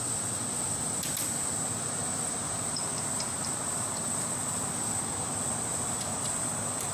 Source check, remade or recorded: remade